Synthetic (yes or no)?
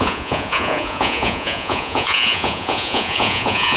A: yes